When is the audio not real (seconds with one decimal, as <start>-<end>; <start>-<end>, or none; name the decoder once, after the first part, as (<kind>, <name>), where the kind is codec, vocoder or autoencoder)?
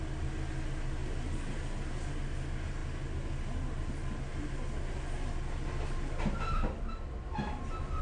none